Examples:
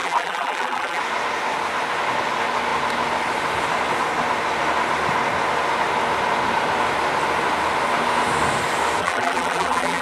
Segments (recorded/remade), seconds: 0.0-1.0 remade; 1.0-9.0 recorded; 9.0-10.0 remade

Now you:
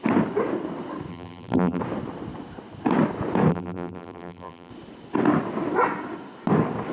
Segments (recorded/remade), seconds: 0.0-1.1 recorded; 1.1-1.8 remade; 1.8-3.5 recorded; 3.5-4.7 remade; 4.7-6.9 recorded